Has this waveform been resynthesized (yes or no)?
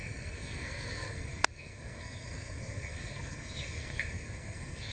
yes